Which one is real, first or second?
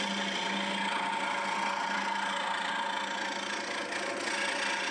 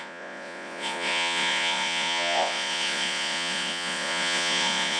first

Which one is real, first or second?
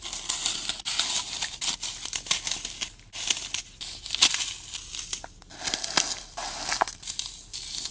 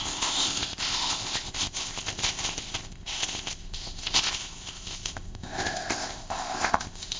first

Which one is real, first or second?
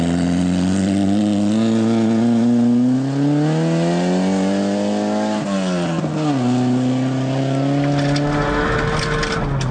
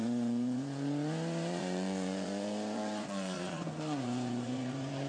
first